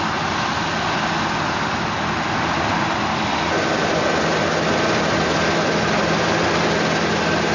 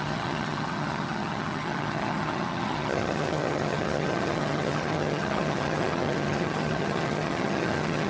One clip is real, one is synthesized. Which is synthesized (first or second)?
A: second